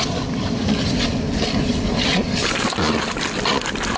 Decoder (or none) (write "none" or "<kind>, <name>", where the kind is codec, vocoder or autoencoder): none